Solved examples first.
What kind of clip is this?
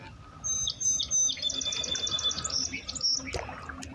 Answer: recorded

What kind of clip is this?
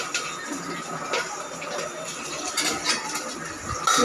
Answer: recorded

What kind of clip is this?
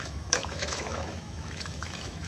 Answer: remade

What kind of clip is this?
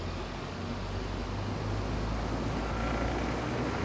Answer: recorded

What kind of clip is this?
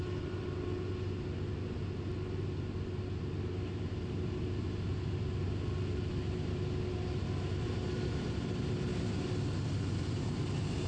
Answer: recorded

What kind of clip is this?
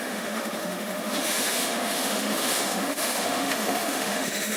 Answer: remade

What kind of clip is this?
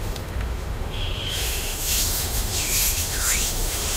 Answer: remade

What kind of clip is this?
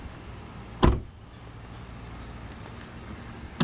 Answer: recorded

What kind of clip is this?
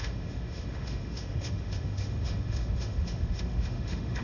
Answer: remade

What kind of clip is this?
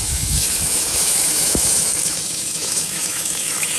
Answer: remade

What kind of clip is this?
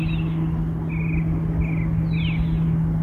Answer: recorded